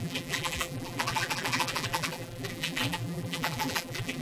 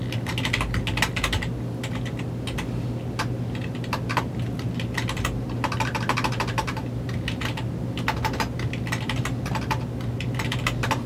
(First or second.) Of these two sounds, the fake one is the first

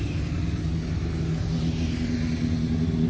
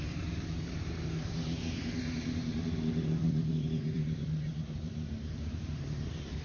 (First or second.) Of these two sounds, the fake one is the second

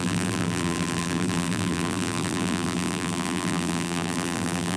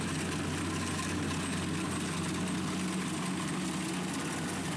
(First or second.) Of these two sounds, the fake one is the first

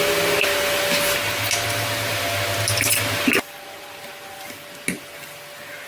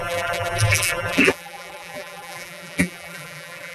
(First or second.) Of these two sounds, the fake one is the second